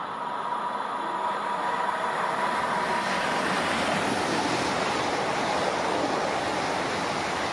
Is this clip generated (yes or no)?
no